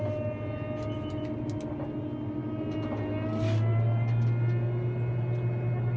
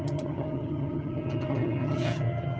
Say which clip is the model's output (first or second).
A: second